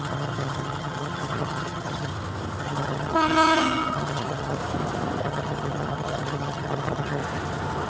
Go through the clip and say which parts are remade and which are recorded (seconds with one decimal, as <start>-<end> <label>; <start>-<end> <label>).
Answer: 0.0-2.1 remade; 2.1-2.6 recorded; 2.6-4.6 remade; 4.6-5.2 recorded; 5.2-7.2 remade; 7.2-7.9 recorded